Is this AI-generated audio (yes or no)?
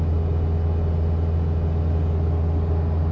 no